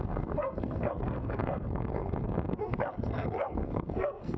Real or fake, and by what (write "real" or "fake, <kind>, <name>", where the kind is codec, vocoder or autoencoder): fake, codec, SNAC